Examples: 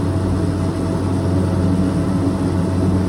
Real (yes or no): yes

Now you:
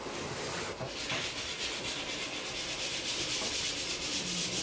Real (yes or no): yes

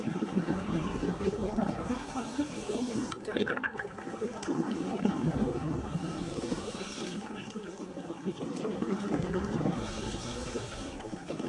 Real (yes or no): no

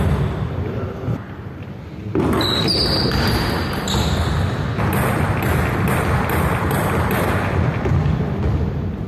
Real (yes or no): yes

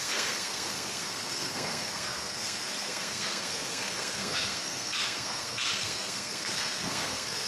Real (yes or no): no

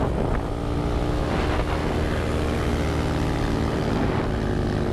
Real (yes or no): yes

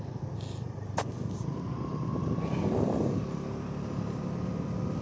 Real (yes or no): yes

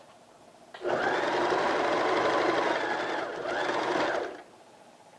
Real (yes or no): yes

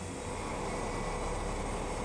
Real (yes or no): yes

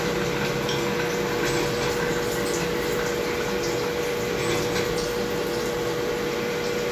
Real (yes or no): yes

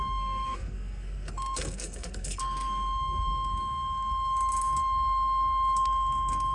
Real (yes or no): no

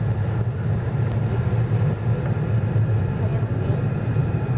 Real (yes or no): yes